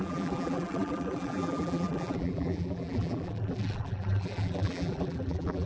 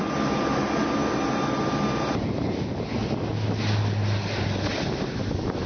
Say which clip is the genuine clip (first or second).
second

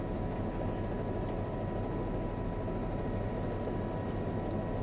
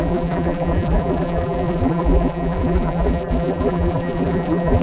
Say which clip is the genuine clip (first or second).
first